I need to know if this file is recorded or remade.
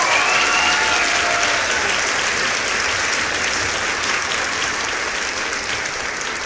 recorded